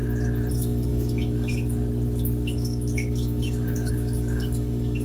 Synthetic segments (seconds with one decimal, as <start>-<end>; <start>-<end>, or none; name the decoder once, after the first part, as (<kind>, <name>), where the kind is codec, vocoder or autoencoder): 0.5-5.0 (codec, DAC)